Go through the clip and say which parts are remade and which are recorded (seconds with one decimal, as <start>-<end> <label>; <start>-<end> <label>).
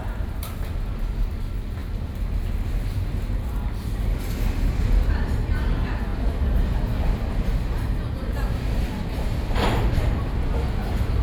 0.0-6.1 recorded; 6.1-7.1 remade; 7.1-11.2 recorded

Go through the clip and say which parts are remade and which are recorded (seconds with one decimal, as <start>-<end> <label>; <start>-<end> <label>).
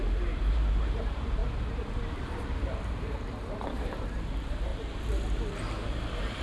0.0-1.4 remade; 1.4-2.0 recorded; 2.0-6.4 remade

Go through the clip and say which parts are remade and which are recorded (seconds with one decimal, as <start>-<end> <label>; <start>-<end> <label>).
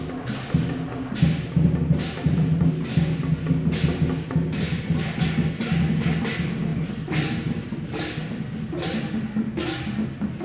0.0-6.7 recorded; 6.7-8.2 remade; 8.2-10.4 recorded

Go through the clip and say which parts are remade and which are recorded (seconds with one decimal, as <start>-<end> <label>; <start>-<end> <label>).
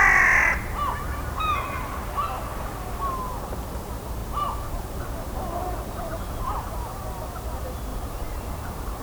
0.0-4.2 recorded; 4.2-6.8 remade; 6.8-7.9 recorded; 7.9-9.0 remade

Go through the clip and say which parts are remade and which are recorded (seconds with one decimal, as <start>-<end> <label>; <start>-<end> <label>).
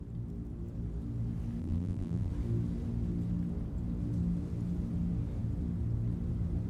0.0-1.6 recorded; 1.6-2.3 remade; 2.3-6.7 recorded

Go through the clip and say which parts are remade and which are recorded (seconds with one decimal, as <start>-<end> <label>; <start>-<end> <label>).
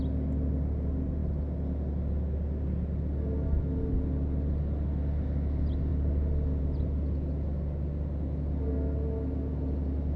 0.0-10.2 recorded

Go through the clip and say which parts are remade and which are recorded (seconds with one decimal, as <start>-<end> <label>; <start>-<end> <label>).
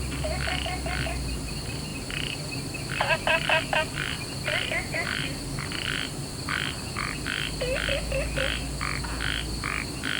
0.0-10.2 recorded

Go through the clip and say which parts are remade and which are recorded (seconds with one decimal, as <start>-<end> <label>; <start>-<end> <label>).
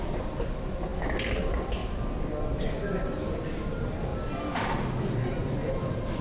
0.0-1.8 remade; 1.8-2.6 recorded; 2.6-4.1 remade; 4.1-5.7 recorded; 5.7-6.2 remade